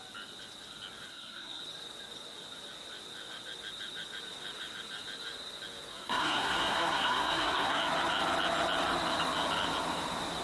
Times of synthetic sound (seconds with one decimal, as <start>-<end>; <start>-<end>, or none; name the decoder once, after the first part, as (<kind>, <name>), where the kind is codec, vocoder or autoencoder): 1.1-1.6 (codec, SNAC); 5.9-7.8